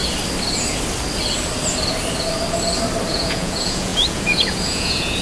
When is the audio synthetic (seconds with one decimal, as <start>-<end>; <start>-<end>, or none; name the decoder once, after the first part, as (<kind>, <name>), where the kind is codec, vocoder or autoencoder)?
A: 3.1-5.2 (vocoder, Vocos)

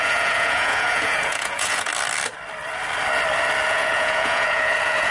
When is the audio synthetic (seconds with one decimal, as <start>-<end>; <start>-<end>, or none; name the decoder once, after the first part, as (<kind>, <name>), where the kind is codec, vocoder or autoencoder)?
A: 0.0-1.9 (vocoder, Vocos); 3.7-5.1

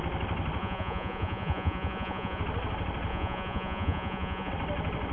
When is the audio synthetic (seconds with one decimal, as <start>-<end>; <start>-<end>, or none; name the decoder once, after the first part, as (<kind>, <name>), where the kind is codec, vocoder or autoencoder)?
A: 0.6-2.4 (vocoder, Vocos); 3.1-4.5

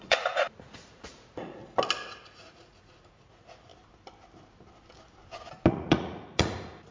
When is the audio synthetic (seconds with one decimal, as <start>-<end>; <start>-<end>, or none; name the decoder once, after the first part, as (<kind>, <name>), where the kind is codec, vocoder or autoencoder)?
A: 0.0-1.6 (vocoder, Vocos); 2.2-3.7; 5.7-6.9

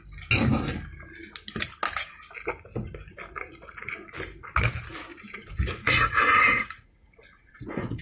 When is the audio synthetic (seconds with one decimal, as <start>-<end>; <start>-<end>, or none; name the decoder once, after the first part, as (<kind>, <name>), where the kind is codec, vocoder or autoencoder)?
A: 5.1-8.0 (vocoder, Vocos)